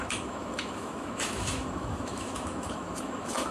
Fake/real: fake